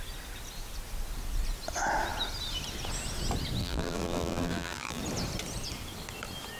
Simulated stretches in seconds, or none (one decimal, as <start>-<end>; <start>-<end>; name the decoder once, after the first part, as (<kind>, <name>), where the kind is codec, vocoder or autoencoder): 3.6-5.0 (vocoder, BigVGAN v2)